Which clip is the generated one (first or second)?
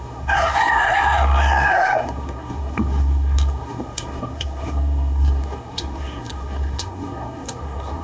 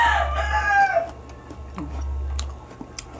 first